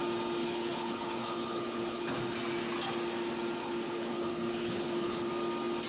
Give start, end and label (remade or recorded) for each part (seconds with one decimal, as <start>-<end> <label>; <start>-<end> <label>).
0.0-0.4 recorded; 0.4-2.1 remade; 2.1-3.6 recorded; 3.6-5.3 remade; 5.3-5.9 recorded